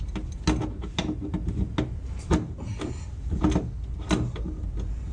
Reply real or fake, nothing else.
real